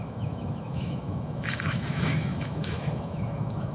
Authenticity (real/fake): fake